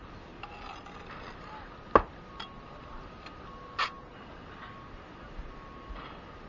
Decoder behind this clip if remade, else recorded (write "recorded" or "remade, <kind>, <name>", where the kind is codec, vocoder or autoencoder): recorded